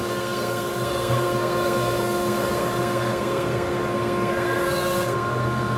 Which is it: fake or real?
fake